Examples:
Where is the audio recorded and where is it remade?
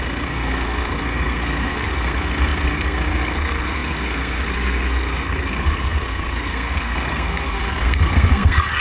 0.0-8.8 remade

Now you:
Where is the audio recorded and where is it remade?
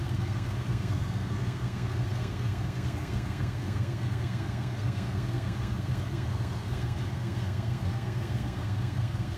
0.0-9.4 remade